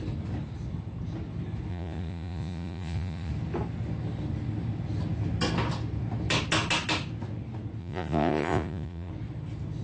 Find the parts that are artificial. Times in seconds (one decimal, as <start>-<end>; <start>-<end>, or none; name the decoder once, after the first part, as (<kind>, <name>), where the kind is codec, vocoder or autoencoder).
1.7-3.3 (vocoder, Vocos); 7.8-9.1